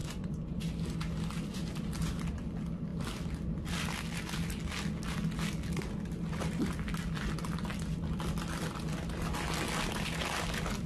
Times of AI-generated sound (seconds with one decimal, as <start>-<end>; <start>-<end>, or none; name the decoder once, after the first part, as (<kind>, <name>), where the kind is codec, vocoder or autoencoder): 0.0-0.6 (vocoder, Vocos)